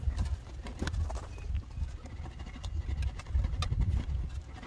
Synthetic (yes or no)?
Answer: no